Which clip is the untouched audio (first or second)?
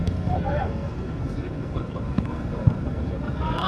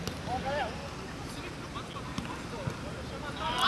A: second